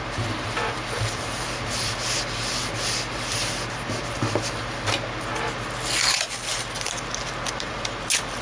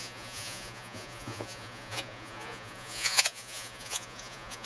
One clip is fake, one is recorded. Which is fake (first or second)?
second